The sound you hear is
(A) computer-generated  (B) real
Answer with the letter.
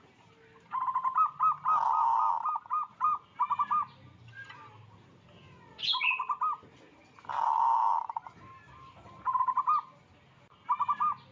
B